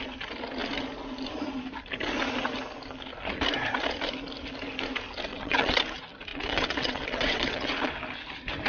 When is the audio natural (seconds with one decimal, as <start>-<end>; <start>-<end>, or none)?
0.0-5.3; 5.8-6.3; 7.9-8.7